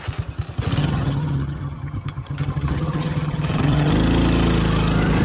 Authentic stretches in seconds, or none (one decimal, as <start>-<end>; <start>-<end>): 0.0-0.8; 3.9-5.2